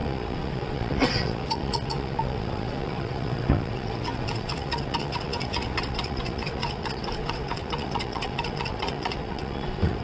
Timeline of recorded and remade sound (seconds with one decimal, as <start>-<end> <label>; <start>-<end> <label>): 0.0-10.0 remade